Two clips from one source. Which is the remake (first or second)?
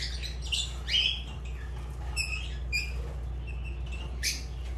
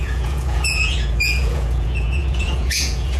second